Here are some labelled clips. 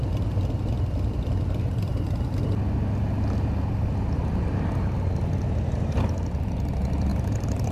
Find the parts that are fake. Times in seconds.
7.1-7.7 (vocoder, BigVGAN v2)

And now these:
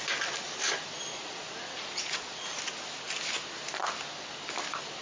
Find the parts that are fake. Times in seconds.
1.1-2.6 (vocoder, Vocos)

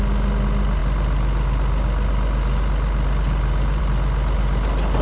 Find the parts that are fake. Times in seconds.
none

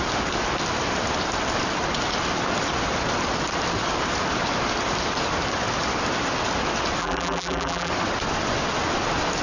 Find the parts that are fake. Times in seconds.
7.0-7.9 (vocoder, BigVGAN v2)

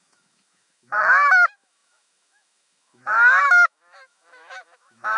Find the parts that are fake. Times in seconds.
0.0-5.2 (autoencoder, DAC-VAE)

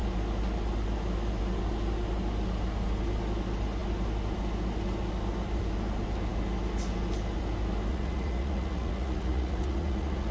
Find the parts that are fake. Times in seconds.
7.9-10.3 (vocoder, Vocos)

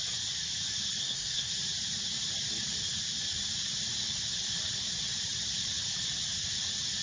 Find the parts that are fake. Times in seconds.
1.0-1.5 (codec, SNAC)